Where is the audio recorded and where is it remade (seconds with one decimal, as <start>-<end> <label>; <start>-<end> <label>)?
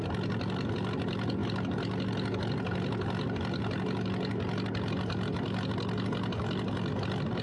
0.0-7.4 recorded